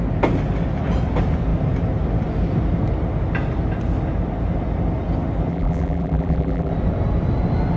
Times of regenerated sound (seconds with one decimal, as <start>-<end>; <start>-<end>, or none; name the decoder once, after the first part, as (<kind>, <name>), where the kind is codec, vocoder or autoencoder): 5.5-6.7 (vocoder, BigVGAN v2)